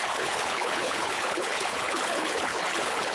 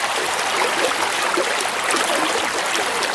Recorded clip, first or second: second